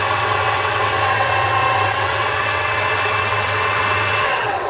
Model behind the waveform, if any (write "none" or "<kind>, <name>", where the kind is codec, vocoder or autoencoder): vocoder, WaveNeXt